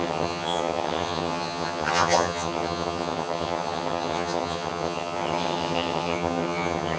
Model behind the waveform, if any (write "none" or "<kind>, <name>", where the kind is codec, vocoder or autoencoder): vocoder, HiFi-GAN